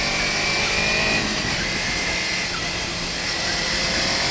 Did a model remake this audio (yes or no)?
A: no